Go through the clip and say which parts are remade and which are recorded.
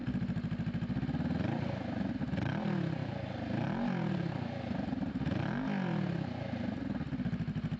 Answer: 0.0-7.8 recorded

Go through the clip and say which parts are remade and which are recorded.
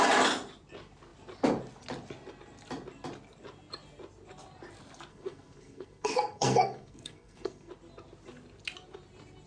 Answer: 0.0-5.1 recorded; 5.1-7.7 remade; 7.7-9.5 recorded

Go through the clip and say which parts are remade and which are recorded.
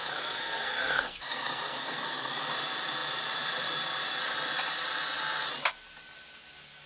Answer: 0.0-2.4 remade; 2.4-6.9 recorded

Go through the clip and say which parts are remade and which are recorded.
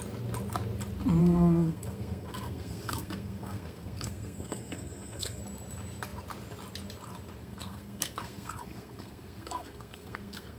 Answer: 0.0-1.2 recorded; 1.2-5.4 remade; 5.4-7.4 recorded; 7.4-10.6 remade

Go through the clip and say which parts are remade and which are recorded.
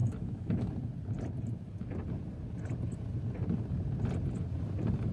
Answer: 0.0-0.7 remade; 0.7-5.1 recorded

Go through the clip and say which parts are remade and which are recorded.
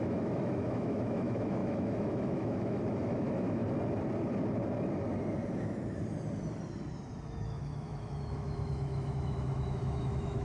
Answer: 0.0-3.6 remade; 3.6-7.4 recorded; 7.4-10.4 remade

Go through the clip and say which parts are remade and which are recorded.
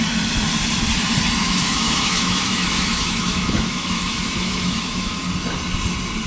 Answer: 0.0-1.4 recorded; 1.4-5.2 remade; 5.2-6.3 recorded